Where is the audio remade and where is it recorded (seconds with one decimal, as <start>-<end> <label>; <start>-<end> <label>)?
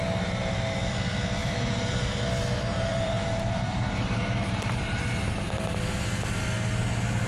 0.0-1.4 recorded; 1.4-2.3 remade; 2.3-2.7 recorded; 2.7-4.9 remade; 4.9-7.3 recorded